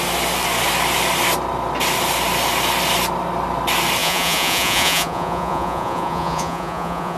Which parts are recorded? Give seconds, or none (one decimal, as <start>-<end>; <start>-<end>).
0.0-4.0